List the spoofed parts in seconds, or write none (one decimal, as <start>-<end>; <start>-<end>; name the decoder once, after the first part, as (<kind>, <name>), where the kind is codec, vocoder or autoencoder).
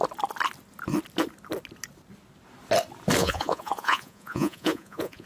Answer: 3.2-5.3 (vocoder, Vocos)